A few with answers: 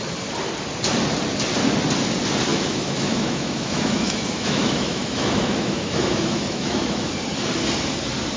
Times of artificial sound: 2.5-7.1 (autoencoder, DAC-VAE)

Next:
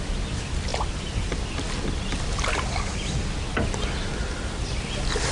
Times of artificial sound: 0.7-1.5 (vocoder, BigVGAN v2)